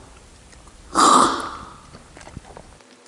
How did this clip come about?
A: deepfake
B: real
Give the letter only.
A